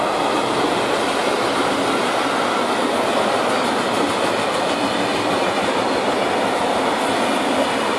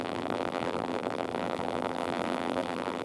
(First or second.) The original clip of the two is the first